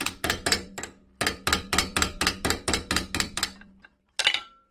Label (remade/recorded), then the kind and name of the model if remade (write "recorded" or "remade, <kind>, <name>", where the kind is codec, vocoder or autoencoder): remade, vocoder, BigVGAN v2